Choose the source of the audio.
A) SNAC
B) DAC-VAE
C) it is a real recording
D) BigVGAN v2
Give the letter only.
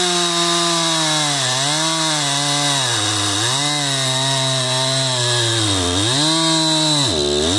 C